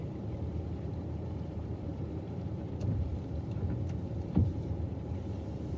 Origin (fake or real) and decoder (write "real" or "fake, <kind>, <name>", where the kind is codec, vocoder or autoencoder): fake, vocoder, BigVGAN v2